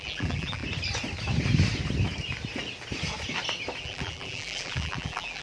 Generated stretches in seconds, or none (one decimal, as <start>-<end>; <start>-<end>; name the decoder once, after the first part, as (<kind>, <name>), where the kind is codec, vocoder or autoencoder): 0.0-0.6 (vocoder, BigVGAN v2); 3.8-5.4